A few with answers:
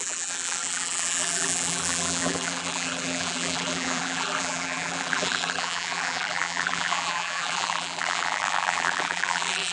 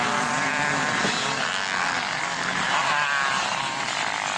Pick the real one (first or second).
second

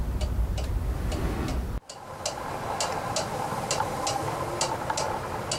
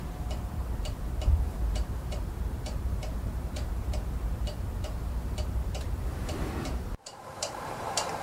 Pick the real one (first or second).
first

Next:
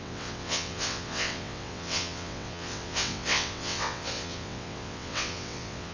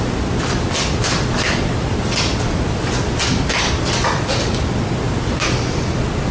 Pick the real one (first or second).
second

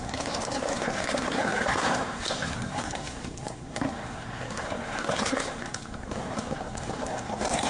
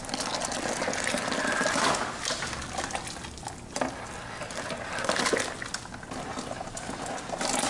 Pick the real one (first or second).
second